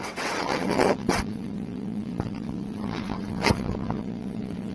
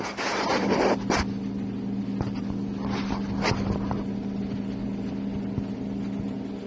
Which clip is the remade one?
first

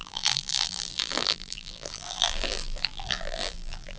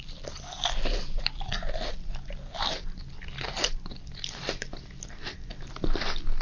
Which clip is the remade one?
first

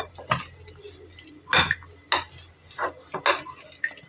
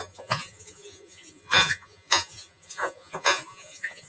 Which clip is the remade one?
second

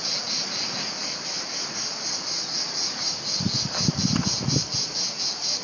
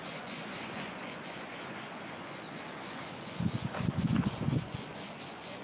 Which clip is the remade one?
second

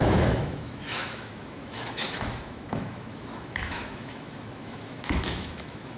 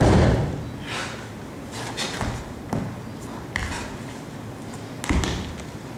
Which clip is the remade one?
first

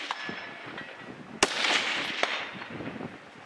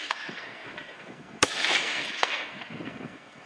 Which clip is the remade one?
second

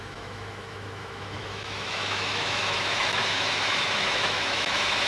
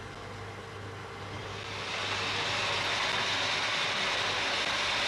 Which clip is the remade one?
first